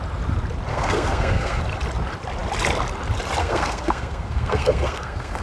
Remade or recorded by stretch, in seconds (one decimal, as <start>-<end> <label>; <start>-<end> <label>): 0.0-0.7 recorded; 0.7-1.6 remade; 1.6-3.4 recorded; 3.4-5.4 remade